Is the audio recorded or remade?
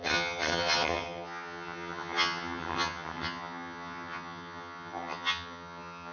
remade